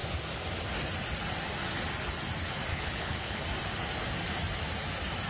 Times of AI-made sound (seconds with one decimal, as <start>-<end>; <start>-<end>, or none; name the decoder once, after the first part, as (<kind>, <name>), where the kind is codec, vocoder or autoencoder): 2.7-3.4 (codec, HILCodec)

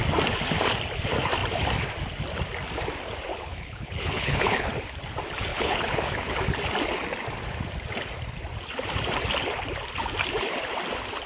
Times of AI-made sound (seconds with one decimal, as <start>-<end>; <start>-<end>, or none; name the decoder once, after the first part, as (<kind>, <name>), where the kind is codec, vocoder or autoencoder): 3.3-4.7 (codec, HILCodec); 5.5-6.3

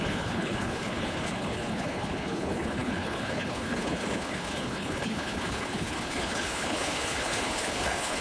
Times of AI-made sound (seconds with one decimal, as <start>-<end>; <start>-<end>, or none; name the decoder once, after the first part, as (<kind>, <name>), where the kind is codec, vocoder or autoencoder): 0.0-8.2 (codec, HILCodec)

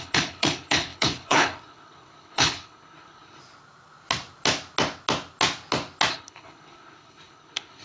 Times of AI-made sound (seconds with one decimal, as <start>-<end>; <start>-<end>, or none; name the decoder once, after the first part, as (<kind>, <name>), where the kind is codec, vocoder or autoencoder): 0.0-3.4 (codec, HILCodec); 6.1-7.8

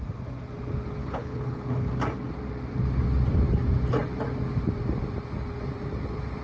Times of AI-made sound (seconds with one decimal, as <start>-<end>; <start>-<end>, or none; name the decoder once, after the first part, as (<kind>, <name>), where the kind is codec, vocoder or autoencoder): 1.0-1.9 (codec, HILCodec)